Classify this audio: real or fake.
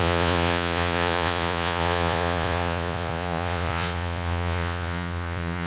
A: fake